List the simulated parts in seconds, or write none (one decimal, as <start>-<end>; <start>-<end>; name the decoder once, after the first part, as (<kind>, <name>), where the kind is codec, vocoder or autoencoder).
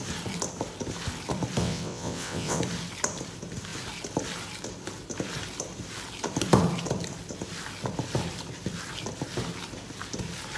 1.6-2.6 (vocoder, WaveNeXt)